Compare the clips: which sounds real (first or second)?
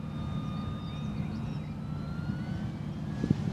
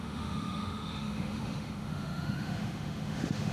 first